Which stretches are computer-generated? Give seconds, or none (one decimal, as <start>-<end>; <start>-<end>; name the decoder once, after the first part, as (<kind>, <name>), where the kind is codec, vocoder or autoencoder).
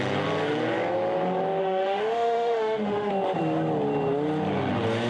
1.6-3.1 (autoencoder, DAC-VAE)